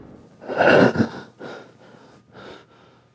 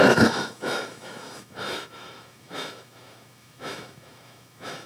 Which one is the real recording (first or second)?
first